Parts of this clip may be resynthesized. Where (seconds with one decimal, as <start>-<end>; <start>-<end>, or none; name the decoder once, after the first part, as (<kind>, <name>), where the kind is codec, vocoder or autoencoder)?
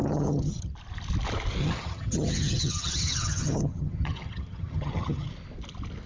0.0-0.7 (vocoder, HiFi-GAN); 1.6-5.3